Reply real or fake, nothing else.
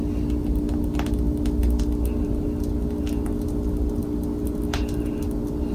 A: real